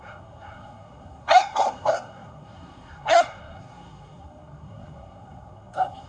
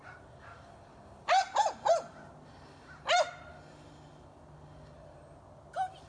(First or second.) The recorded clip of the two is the second